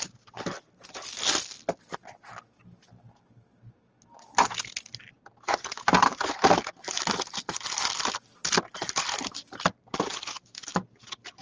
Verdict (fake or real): real